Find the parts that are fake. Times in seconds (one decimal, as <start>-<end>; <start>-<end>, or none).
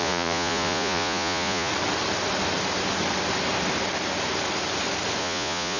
0.0-1.7; 5.2-5.8